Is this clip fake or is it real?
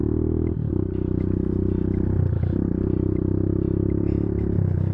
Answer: real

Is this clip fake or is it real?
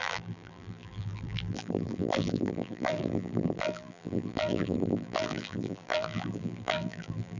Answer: fake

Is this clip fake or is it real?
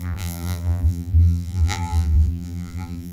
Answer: fake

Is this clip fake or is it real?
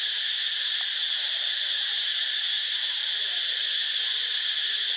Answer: fake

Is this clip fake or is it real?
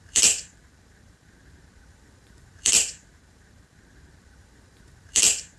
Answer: fake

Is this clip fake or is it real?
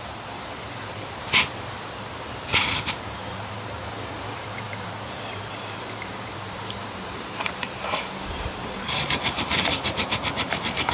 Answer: fake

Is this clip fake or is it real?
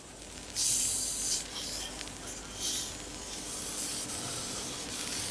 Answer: fake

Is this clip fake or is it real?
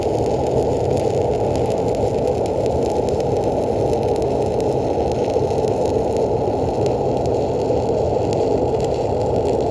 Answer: real